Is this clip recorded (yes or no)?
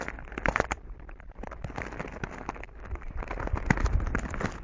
yes